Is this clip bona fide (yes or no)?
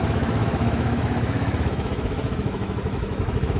no